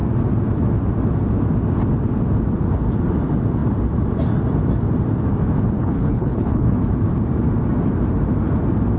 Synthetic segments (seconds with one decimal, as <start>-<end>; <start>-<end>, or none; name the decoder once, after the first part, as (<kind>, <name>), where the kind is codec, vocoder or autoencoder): 5.8-6.8 (codec, HILCodec)

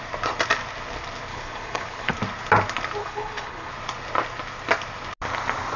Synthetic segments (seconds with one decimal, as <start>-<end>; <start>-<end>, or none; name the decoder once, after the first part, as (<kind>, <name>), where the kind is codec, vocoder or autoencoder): 1.3-2.1 (codec, HILCodec); 3.0-3.7

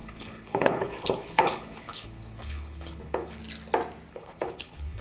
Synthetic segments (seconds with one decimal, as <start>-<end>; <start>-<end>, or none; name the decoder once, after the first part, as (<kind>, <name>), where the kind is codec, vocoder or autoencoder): 0.0-3.4 (codec, HILCodec); 4.1-5.0

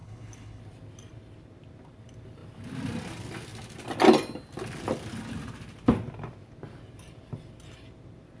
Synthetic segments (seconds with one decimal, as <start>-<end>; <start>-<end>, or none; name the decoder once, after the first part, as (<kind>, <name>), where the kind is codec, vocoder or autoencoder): 0.0-0.6 (codec, HILCodec)

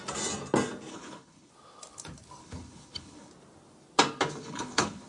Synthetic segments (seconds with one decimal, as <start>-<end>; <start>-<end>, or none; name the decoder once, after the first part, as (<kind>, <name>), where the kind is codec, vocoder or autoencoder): 0.9-1.5 (codec, HILCodec); 2.4-3.3; 4.4-5.1